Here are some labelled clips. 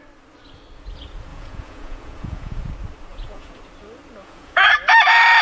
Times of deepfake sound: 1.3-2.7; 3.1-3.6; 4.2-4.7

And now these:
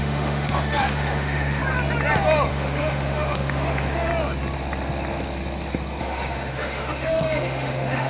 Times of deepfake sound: 0.0-1.6; 2.5-4.1; 6.0-8.1